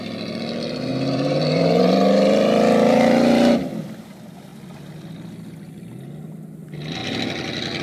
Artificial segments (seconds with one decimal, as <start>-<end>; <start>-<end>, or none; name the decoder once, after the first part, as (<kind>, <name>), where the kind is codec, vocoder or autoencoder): 0.9-3.6 (vocoder, BigVGAN v2)